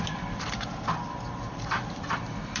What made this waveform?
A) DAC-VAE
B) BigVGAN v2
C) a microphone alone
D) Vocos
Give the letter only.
B